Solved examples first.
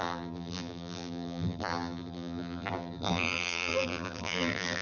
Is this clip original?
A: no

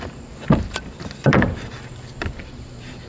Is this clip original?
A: no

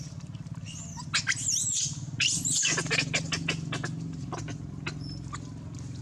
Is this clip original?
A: yes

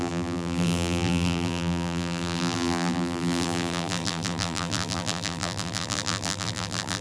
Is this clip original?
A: no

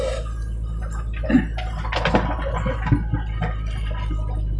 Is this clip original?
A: yes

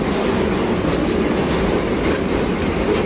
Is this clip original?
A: no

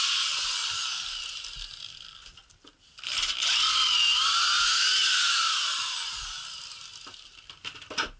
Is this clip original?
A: yes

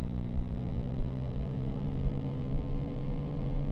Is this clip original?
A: no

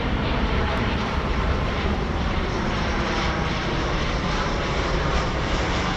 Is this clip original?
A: no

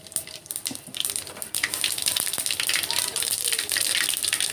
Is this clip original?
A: no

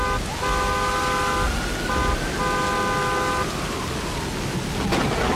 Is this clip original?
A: yes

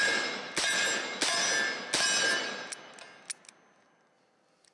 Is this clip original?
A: yes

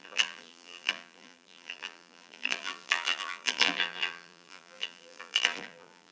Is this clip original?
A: no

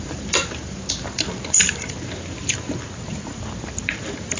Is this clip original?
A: no